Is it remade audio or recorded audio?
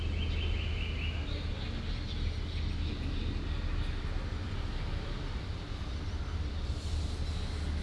recorded